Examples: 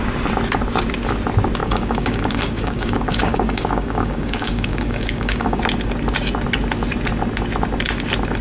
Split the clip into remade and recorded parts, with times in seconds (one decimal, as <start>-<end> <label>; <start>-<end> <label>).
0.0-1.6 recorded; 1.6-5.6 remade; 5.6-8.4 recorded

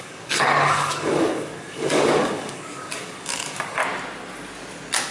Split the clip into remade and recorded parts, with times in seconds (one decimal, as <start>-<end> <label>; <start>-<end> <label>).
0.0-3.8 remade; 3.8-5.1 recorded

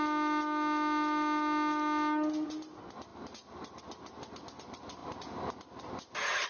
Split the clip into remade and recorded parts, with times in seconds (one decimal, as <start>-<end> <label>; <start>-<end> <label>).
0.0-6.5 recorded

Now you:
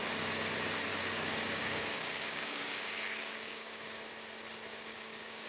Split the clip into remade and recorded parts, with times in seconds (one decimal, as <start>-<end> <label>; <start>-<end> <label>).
0.0-0.9 recorded; 0.9-4.1 remade; 4.1-4.7 recorded; 4.7-5.5 remade

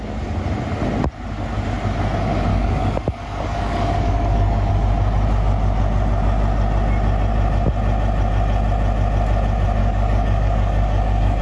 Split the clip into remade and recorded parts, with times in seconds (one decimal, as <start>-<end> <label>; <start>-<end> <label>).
0.0-2.5 recorded; 2.5-4.7 remade; 4.7-9.8 recorded; 9.8-11.4 remade